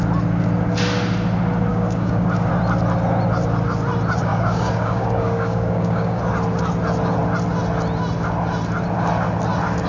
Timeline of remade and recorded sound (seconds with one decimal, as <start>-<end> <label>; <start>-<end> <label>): 0.0-1.7 recorded; 1.7-2.5 remade; 2.5-4.3 recorded; 4.3-6.2 remade; 6.2-9.9 recorded